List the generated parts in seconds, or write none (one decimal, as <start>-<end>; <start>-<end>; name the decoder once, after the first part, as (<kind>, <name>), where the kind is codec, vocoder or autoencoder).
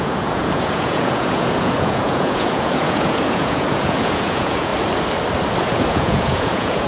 0.0-4.7 (vocoder, Vocos); 5.6-6.9